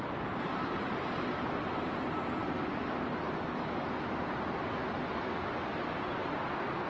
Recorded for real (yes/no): yes